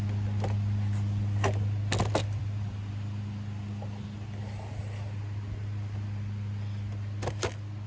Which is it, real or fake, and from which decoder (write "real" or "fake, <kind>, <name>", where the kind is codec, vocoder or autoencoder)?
real